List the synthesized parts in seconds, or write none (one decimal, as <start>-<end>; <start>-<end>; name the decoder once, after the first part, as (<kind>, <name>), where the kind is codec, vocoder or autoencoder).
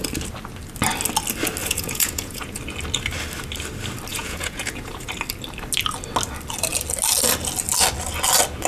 1.6-2.6 (vocoder, Vocos); 4.1-5.1